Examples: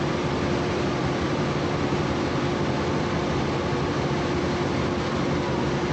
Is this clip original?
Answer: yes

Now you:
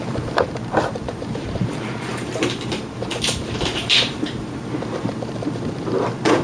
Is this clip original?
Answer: no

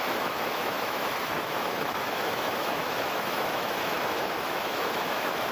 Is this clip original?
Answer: no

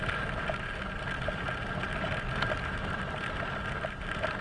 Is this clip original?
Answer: yes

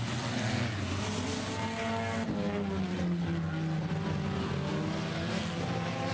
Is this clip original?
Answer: yes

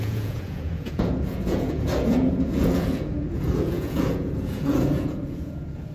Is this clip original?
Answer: no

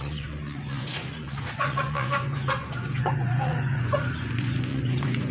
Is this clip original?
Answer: no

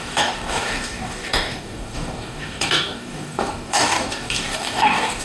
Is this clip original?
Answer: no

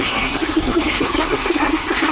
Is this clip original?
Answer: no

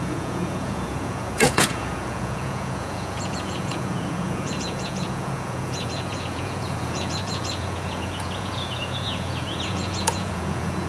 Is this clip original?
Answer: no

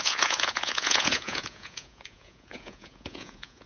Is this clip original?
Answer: no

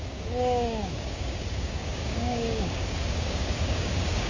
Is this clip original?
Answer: no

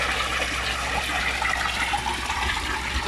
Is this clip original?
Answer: yes